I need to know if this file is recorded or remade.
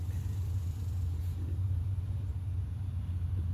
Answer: remade